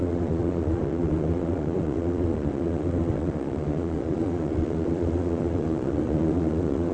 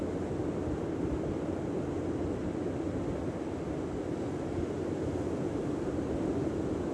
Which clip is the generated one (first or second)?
first